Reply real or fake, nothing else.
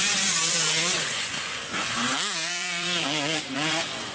fake